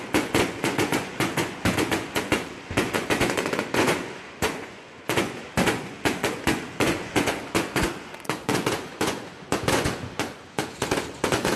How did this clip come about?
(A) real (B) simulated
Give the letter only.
B